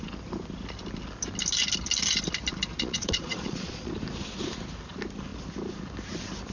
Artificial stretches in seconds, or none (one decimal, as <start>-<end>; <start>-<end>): 2.7-3.9